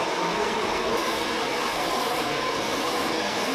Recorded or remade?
remade